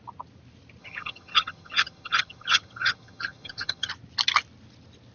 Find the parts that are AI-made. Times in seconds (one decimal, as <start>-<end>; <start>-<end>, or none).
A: 0.8-3.9